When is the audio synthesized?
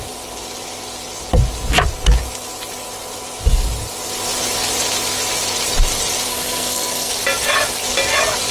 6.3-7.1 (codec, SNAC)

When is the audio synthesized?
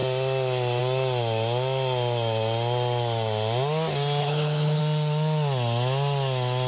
4.2-4.8 (codec, HILCodec)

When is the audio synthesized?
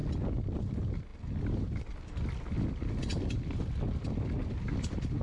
none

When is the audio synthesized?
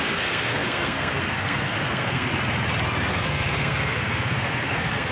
0.0-2.3 (codec, SNAC); 3.1-5.1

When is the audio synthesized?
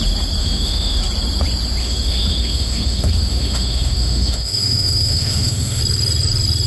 0.4-1.0 (autoencoder, DAC-VAE); 1.8-5.8